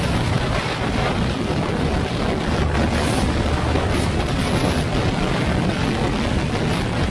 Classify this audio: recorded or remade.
recorded